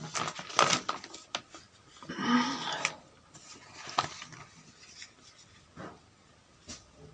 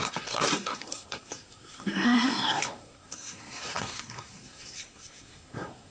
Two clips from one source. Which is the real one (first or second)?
first